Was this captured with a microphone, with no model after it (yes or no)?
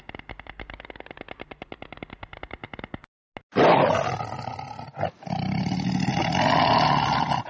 yes